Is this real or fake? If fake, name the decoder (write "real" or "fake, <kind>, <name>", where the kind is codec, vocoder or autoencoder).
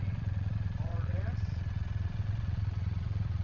fake, vocoder, WaveNeXt